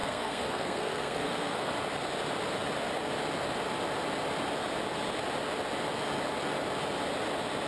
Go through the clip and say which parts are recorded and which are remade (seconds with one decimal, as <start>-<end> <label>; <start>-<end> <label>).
0.0-1.7 remade; 1.7-7.7 recorded